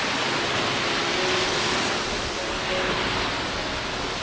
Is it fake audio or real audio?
real